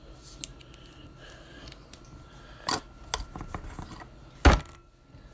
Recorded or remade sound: recorded